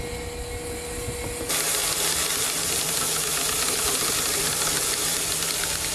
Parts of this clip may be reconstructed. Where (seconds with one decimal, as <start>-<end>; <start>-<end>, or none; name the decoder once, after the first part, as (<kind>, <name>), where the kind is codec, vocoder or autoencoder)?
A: 1.8-5.3 (vocoder, BigVGAN v2)